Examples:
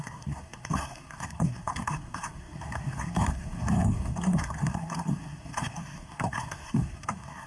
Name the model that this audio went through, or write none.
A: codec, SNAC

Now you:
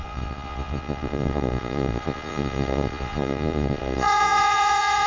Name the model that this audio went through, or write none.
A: vocoder, Vocos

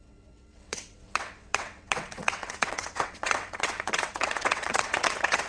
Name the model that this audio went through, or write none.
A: vocoder, WaveNeXt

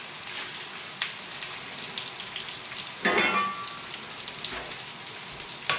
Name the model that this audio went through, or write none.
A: none